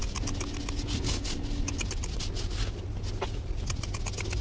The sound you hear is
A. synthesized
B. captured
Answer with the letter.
B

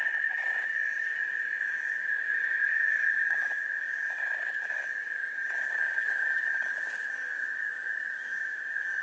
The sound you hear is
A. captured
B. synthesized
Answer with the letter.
B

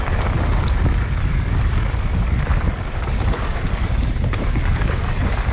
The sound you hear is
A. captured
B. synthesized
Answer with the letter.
B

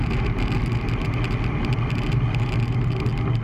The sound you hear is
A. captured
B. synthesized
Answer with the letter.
A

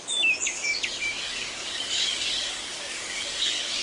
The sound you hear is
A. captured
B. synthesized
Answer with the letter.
B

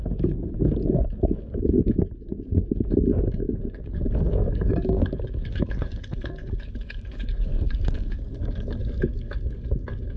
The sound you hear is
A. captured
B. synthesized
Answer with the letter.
B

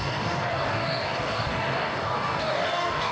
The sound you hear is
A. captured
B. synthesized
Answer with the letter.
B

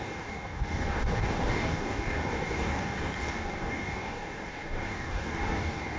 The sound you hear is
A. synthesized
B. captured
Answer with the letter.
A